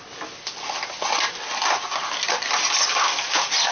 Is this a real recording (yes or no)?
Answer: yes